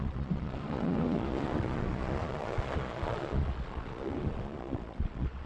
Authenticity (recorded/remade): remade